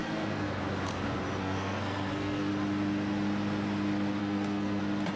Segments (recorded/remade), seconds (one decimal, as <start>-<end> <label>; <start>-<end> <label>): 0.0-0.6 remade; 0.6-1.4 recorded; 1.4-2.5 remade; 2.5-4.2 recorded; 4.2-4.8 remade; 4.8-5.2 recorded